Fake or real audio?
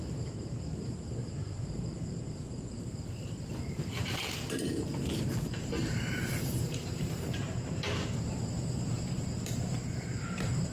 fake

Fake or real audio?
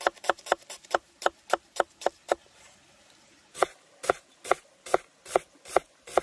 real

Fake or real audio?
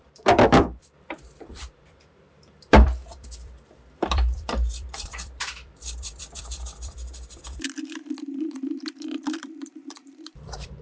fake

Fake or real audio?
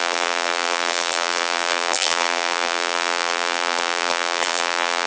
fake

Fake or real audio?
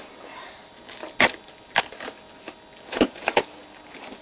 real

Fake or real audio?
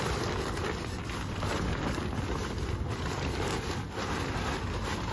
fake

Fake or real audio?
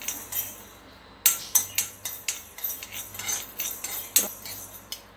real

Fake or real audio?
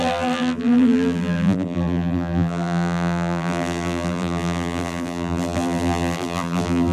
fake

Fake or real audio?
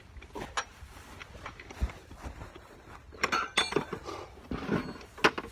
real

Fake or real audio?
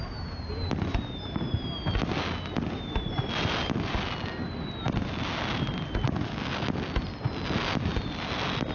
real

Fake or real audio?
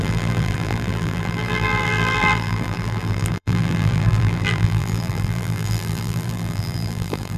fake